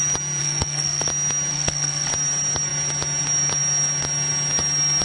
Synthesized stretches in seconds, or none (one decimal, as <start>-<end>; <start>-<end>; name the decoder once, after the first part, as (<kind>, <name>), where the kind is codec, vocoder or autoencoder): 0.4-1.1 (codec, SNAC); 1.5-2.1